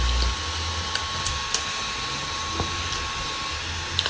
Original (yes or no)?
yes